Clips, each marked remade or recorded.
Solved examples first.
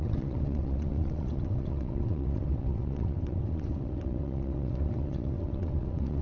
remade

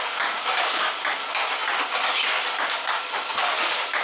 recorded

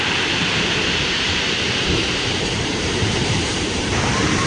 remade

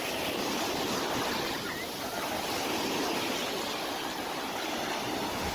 recorded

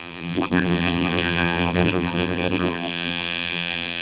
remade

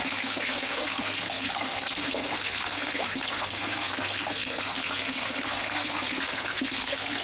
remade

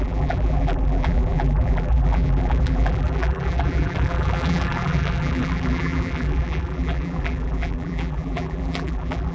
remade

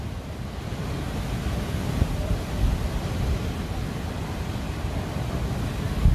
recorded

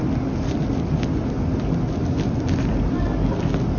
recorded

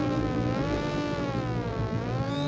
remade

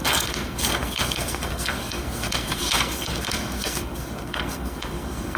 remade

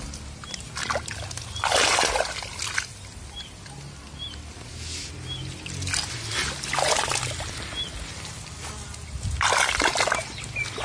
recorded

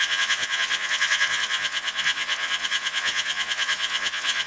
remade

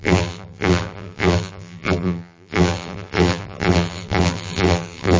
remade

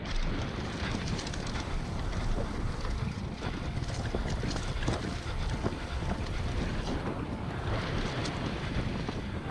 remade